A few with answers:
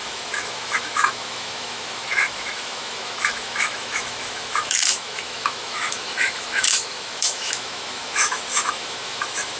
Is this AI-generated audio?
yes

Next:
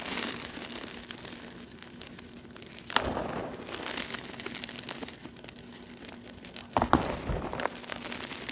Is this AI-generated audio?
no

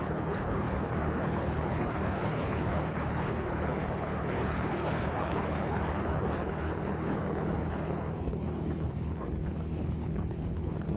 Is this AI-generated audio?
yes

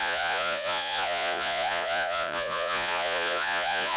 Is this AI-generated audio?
yes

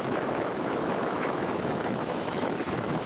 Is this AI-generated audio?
yes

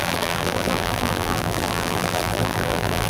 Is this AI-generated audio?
yes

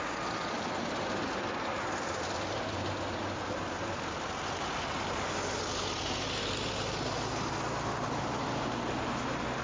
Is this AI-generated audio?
no